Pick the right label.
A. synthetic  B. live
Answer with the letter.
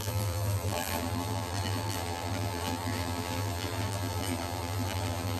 A